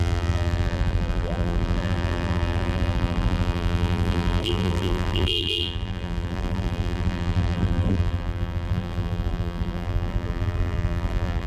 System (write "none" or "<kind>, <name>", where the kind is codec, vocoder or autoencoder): vocoder, BigVGAN v2